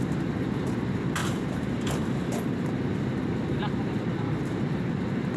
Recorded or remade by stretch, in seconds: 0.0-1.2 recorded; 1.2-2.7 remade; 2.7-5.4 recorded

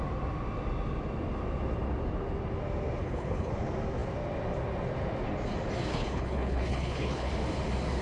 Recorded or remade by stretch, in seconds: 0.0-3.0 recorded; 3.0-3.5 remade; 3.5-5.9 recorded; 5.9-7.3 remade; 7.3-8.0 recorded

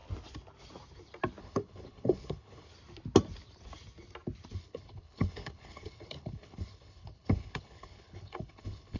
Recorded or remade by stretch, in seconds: 0.0-1.4 recorded; 1.4-2.7 remade; 2.7-4.6 recorded; 4.6-9.0 remade

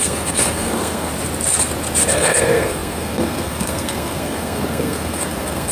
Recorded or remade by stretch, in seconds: 0.0-1.1 remade; 1.1-2.1 recorded; 2.1-5.7 remade

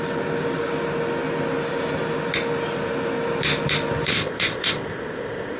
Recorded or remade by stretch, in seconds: 0.0-4.1 recorded; 4.1-5.6 remade

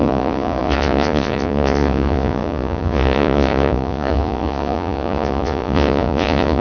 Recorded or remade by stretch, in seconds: 0.0-6.6 remade

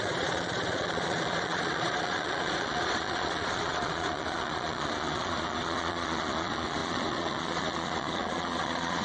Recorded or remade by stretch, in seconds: 0.0-9.0 remade